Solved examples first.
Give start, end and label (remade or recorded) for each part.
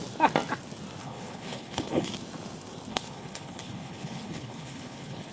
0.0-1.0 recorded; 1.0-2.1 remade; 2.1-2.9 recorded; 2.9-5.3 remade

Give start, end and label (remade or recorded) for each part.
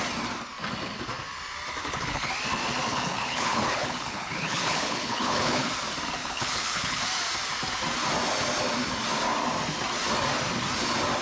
0.0-1.8 recorded; 1.8-2.3 remade; 2.3-2.9 recorded; 2.9-5.7 remade; 5.7-6.2 recorded; 6.2-7.0 remade; 7.0-11.2 recorded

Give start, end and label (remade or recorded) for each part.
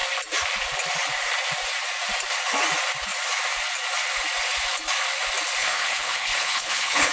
0.0-5.6 recorded; 5.6-7.1 remade